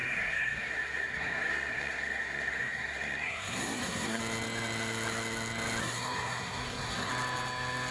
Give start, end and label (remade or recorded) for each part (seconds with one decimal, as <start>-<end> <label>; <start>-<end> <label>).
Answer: 0.0-4.2 remade; 4.2-5.8 recorded; 5.8-7.1 remade; 7.1-7.9 recorded